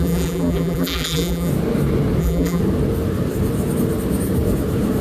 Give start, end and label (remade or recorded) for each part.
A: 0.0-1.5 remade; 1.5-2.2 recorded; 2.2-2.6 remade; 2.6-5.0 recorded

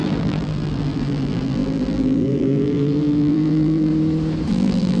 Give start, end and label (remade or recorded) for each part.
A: 0.0-3.9 remade; 3.9-4.5 recorded; 4.5-5.0 remade

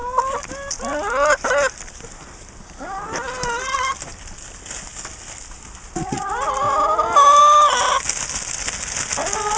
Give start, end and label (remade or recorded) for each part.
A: 0.0-9.6 recorded